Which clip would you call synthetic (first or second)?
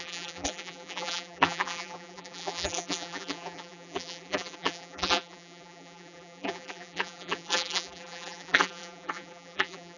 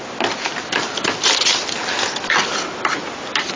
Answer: first